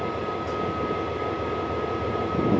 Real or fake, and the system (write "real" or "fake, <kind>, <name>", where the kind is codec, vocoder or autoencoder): real